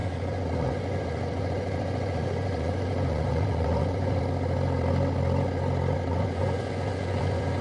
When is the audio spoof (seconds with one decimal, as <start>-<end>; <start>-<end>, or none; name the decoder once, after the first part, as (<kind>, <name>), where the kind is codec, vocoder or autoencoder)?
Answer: 0.0-4.2 (vocoder, Vocos); 6.1-7.6